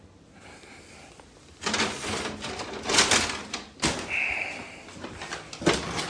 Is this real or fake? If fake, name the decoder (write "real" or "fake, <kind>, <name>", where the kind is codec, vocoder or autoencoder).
real